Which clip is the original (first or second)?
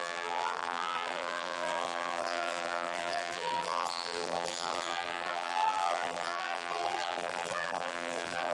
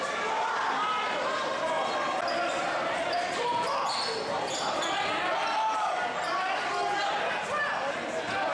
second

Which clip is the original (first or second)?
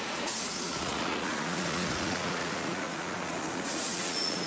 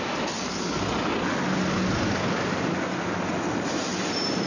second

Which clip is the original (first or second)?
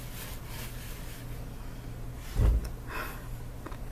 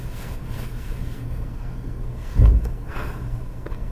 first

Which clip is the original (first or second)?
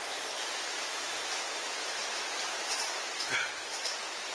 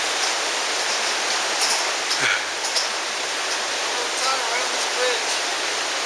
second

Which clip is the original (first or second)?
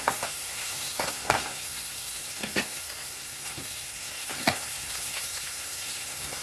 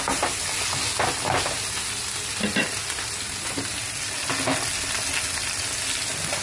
second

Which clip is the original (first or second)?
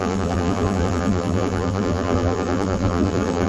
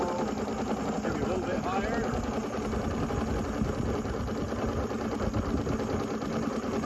second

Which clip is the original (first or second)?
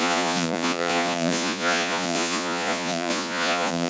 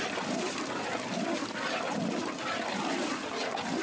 second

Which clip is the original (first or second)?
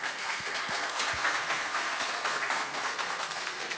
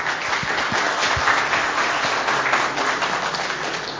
second